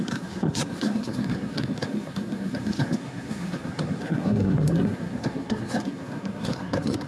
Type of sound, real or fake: fake